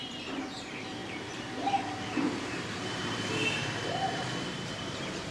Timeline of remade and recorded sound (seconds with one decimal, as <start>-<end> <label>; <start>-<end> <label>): 0.0-5.3 remade